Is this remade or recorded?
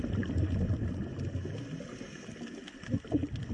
recorded